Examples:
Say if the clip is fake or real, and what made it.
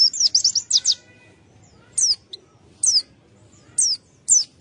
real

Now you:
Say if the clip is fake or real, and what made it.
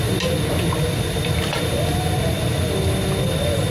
real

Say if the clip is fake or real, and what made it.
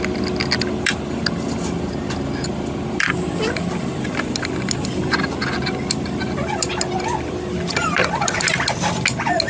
real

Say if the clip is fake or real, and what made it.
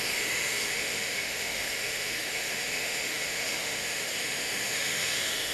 fake, autoencoder, DAC-VAE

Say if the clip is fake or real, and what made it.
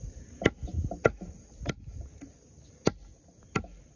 real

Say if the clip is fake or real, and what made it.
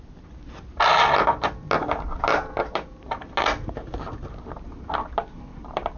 real